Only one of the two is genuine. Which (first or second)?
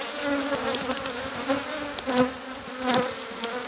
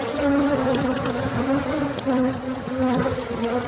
first